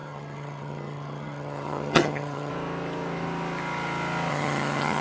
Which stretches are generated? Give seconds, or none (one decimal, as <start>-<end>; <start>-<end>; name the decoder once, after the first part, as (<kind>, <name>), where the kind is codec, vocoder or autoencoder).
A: 0.0-2.5 (vocoder, HiFi-GAN); 4.3-5.0